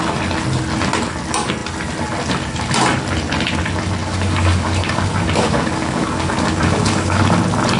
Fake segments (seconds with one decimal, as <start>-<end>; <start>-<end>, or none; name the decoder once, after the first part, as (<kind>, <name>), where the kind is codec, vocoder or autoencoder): 4.0-7.2 (codec, DAC)